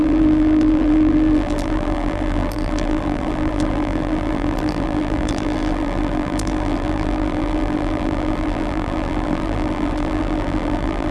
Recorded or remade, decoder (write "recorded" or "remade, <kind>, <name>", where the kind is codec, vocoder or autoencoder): remade, vocoder, BigVGAN v2